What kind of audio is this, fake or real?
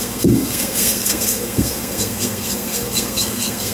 fake